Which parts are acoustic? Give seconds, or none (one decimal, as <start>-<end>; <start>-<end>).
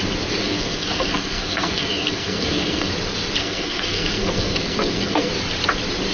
0.0-0.4; 2.9-3.4; 5.3-6.1